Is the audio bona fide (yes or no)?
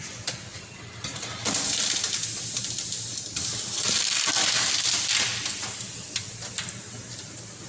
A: no